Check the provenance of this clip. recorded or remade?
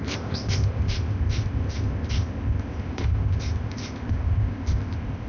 remade